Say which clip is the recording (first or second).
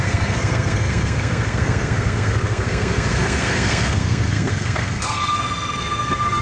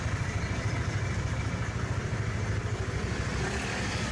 second